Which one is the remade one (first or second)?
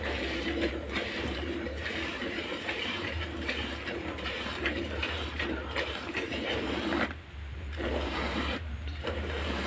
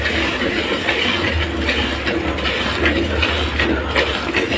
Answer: first